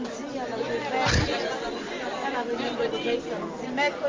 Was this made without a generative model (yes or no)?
yes